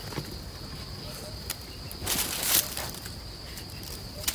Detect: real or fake real